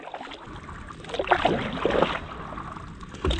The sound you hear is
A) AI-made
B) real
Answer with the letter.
B